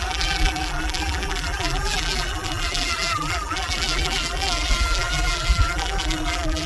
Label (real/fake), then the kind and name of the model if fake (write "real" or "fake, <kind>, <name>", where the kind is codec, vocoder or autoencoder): fake, vocoder, BigVGAN v2